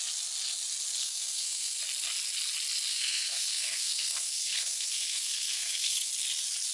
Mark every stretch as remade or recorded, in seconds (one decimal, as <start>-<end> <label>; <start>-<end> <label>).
0.0-1.0 recorded; 1.0-1.8 remade; 1.8-2.9 recorded; 2.9-6.1 remade; 6.1-6.7 recorded